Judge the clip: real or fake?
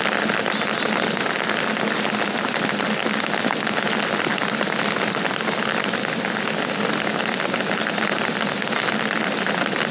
real